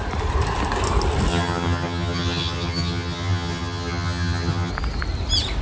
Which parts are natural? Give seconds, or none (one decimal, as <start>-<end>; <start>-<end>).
0.0-1.3; 4.7-5.6

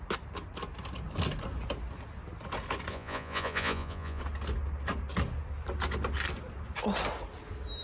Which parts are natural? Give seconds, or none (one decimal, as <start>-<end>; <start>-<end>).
0.0-2.9; 4.2-7.8

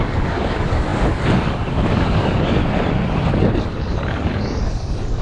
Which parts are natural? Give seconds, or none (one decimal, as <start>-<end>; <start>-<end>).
2.6-3.6

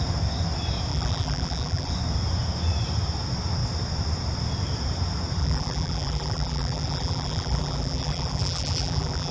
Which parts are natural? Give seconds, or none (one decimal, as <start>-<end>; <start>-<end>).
0.0-0.9; 1.9-5.4

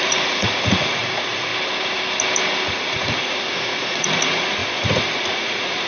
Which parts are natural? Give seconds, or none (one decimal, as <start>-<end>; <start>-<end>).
1.5-2.7

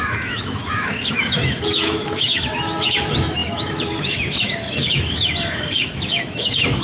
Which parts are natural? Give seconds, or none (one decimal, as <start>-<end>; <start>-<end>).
none

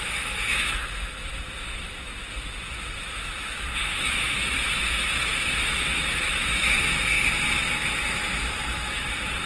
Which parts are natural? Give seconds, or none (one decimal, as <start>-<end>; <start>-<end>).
none